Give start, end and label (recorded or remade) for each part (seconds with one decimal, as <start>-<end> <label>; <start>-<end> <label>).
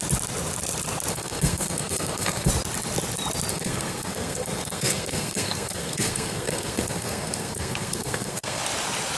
0.0-1.1 recorded; 1.1-2.5 remade; 2.5-3.5 recorded; 3.5-8.6 remade; 8.6-9.2 recorded